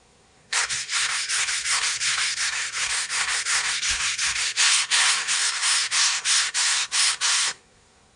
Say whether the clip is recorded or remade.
remade